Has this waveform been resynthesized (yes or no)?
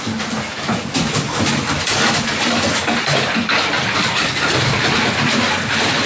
no